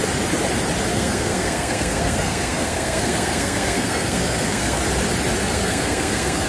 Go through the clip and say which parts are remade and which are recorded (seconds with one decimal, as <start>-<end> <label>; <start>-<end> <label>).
0.0-0.9 recorded; 0.9-4.8 remade; 4.8-5.4 recorded; 5.4-6.5 remade

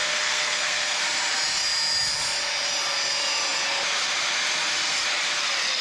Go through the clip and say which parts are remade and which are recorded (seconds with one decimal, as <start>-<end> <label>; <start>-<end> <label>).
0.0-1.0 remade; 1.0-5.8 recorded

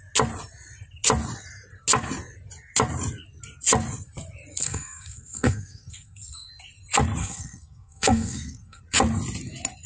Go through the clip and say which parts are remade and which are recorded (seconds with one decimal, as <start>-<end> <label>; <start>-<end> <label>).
0.0-4.6 recorded; 4.6-6.5 remade; 6.5-7.2 recorded; 7.2-8.8 remade; 8.8-9.9 recorded

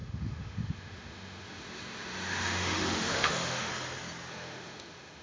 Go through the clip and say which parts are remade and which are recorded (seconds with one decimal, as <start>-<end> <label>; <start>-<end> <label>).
0.0-3.7 remade; 3.7-4.3 recorded; 4.3-5.2 remade

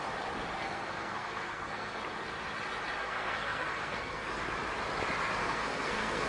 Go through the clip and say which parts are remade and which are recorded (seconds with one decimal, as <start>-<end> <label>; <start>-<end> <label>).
0.0-0.6 recorded; 0.6-2.0 remade; 2.0-3.0 recorded; 3.0-4.4 remade; 4.4-5.4 recorded; 5.4-6.3 remade

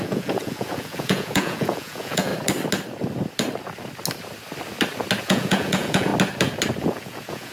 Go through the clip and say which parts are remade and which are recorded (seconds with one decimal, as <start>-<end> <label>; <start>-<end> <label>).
0.0-2.3 remade; 2.3-5.2 recorded; 5.2-6.1 remade; 6.1-6.8 recorded; 6.8-7.5 remade

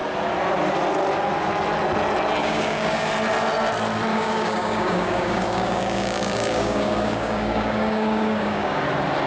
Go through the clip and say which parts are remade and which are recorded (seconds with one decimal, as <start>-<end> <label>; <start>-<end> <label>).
0.0-2.4 recorded; 2.4-3.1 remade; 3.1-4.1 recorded; 4.1-8.8 remade; 8.8-9.3 recorded